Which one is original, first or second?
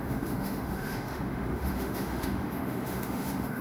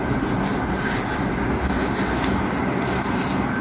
second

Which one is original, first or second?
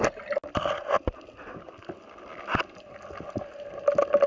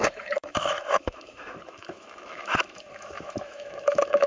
first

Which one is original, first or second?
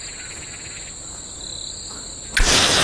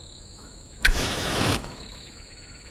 first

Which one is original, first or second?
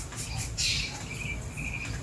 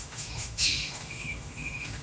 first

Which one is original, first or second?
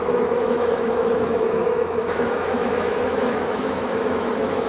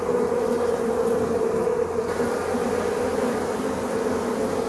second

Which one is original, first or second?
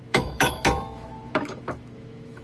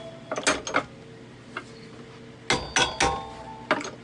second